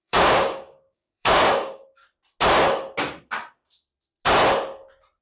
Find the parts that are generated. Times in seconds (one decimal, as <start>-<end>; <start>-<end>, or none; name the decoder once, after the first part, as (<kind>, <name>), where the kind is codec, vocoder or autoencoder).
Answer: 0.0-2.0 (codec, DAC)